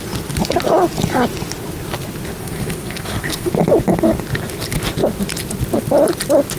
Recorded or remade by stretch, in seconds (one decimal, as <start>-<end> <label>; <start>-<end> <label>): 0.0-2.4 recorded; 2.4-3.5 remade; 3.5-6.6 recorded